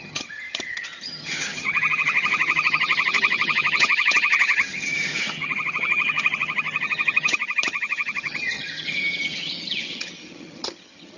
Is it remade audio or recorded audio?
remade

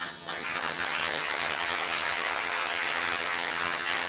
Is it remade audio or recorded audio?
remade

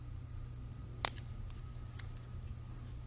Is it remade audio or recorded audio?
recorded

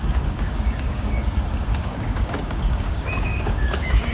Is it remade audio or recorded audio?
remade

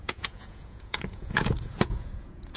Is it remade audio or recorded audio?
remade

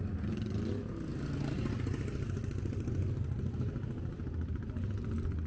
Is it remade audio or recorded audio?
recorded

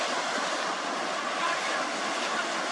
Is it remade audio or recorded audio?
recorded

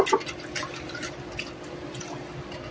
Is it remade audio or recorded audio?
recorded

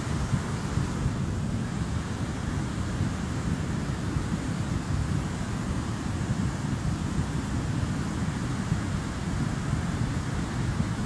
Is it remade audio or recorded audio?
recorded